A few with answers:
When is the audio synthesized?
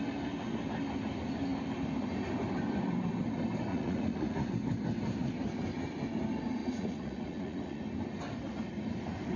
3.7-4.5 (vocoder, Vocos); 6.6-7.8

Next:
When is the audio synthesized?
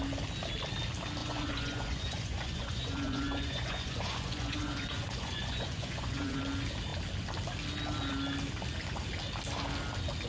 1.2-6.4 (vocoder, Vocos)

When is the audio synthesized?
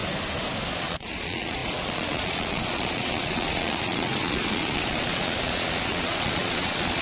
0.7-7.0 (vocoder, Vocos)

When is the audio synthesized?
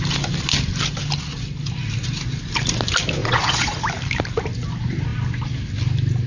3.2-3.8 (vocoder, Vocos)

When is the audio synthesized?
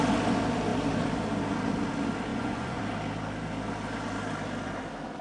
2.3-2.8 (vocoder, Vocos)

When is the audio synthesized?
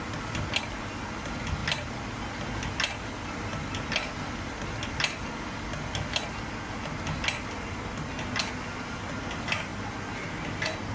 none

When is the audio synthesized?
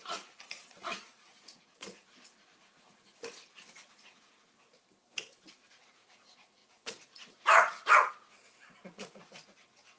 0.0-4.8 (vocoder, Vocos); 5.7-10.0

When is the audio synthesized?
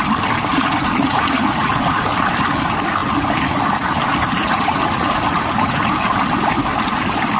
0.5-2.3 (vocoder, Vocos); 4.4-5.8